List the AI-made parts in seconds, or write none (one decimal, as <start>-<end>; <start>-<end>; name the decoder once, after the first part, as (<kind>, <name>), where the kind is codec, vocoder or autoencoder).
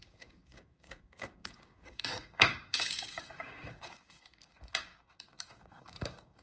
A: 0.0-6.4 (codec, DAC)